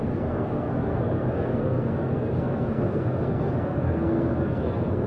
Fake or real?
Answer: fake